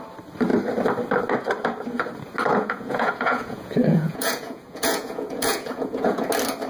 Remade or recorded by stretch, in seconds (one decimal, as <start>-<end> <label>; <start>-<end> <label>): 0.0-2.5 recorded; 2.5-6.3 remade; 6.3-6.7 recorded